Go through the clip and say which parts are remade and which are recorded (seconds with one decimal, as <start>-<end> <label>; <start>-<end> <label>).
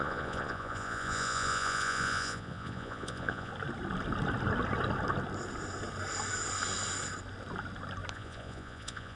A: 0.0-3.5 remade; 3.5-8.1 recorded; 8.1-9.2 remade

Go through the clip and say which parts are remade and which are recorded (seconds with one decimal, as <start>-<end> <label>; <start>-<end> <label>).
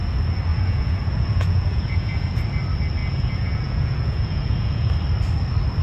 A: 0.0-0.5 recorded; 0.5-2.4 remade; 2.4-3.0 recorded; 3.0-4.9 remade; 4.9-5.8 recorded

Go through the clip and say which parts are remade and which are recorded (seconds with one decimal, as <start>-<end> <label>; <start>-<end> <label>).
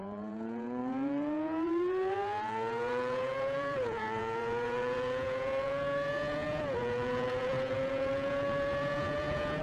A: 0.0-9.6 remade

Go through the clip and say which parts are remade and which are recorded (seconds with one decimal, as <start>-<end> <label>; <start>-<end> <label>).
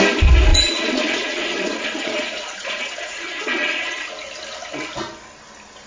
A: 0.0-0.5 recorded; 0.5-4.0 remade; 4.0-5.9 recorded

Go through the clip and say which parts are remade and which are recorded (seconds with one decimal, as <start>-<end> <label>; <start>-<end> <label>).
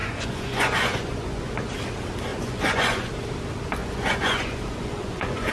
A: 0.0-1.7 remade; 1.7-2.3 recorded; 2.3-3.1 remade; 3.1-3.8 recorded; 3.8-5.5 remade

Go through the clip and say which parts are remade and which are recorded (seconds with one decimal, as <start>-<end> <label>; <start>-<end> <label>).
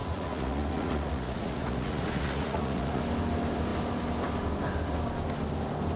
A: 0.0-3.0 remade; 3.0-6.0 recorded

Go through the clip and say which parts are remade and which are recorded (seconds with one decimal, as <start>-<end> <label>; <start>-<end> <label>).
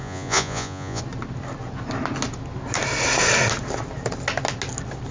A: 0.0-1.0 remade; 1.0-5.1 recorded